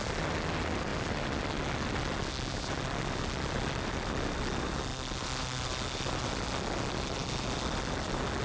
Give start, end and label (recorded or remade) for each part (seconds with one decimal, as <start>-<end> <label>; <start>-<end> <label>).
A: 0.0-8.4 recorded